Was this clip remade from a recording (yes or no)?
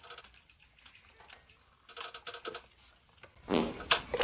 no